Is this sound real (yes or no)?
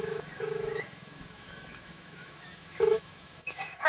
no